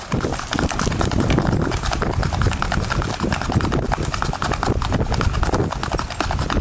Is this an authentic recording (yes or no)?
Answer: yes